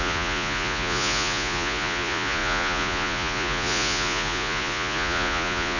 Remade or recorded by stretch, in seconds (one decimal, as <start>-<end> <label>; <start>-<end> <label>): 0.0-5.8 remade